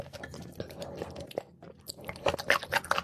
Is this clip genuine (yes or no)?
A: yes